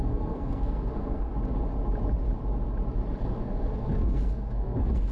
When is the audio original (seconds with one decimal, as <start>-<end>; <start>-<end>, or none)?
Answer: 1.3-3.2